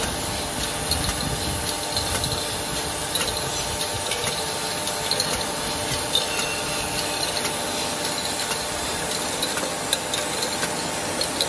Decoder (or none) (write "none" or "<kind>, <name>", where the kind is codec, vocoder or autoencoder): none